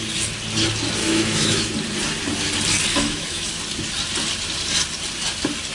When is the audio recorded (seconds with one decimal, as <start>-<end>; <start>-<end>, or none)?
0.0-1.0; 1.7-2.9; 3.6-5.7

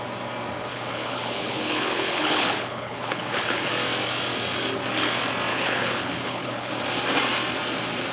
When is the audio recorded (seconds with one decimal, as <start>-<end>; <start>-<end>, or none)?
0.0-0.7; 3.7-5.5; 6.7-8.1